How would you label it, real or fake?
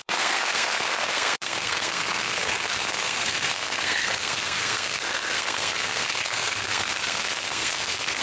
fake